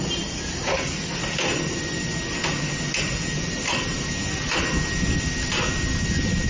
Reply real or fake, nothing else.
real